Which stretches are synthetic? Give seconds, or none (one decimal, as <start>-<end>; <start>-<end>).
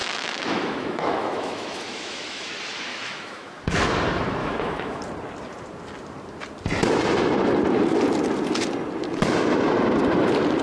0.0-2.5; 2.9-3.5; 4.4-5.0